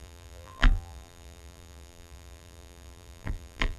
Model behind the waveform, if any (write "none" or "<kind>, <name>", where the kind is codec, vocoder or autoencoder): vocoder, BigVGAN v2